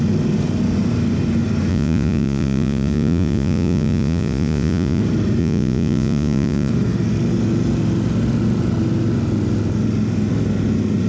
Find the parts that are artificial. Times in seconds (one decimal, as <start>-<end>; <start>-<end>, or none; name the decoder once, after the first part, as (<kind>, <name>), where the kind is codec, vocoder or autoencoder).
1.7-5.0 (vocoder, Vocos); 5.4-6.7